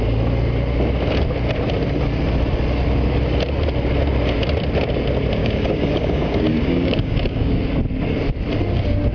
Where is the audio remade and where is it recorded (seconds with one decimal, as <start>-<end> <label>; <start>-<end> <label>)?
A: 0.0-5.4 recorded; 5.4-7.5 remade; 7.5-9.1 recorded